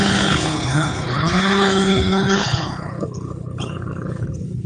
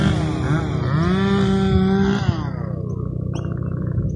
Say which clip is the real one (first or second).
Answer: second